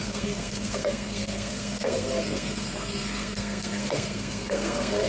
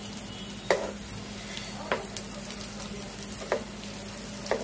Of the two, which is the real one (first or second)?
second